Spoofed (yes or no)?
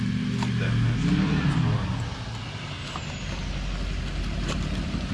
no